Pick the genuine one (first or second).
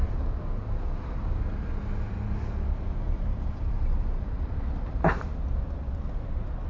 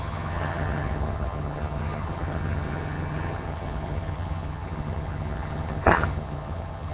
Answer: first